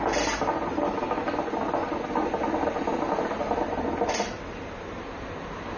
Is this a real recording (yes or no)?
yes